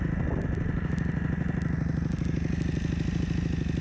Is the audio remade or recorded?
recorded